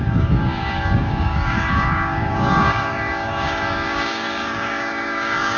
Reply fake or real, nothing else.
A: fake